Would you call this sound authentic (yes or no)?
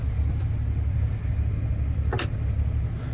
yes